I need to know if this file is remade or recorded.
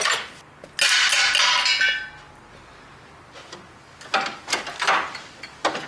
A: recorded